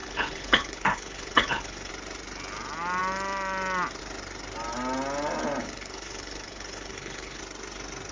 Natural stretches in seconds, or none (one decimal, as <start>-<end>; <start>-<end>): 1.9-5.6; 7.4-8.1